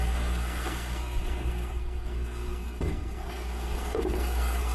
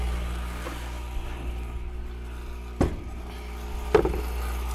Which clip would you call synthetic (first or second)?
first